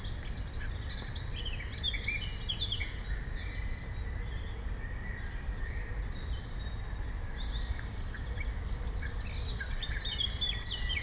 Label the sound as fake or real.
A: real